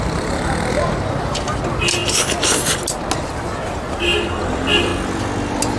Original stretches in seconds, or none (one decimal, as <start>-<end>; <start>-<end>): 2.0-3.3; 4.9-5.8